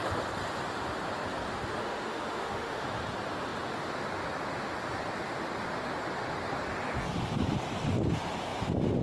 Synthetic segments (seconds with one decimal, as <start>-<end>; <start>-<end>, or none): 1.8-2.8